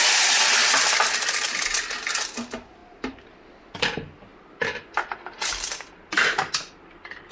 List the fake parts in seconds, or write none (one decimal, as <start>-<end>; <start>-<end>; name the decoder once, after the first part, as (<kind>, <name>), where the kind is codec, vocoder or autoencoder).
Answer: none